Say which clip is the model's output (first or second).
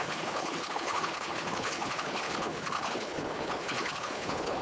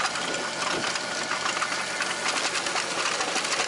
first